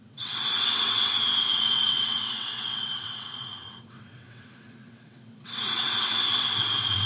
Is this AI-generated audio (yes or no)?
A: yes